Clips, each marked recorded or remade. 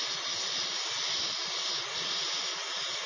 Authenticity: recorded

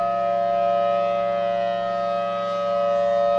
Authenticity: recorded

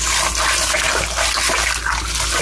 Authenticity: recorded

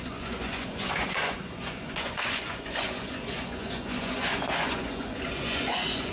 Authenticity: remade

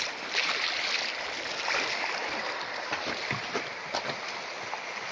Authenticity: recorded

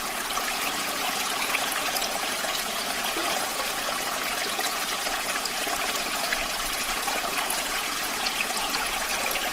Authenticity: remade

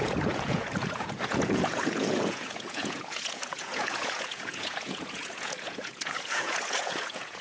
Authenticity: remade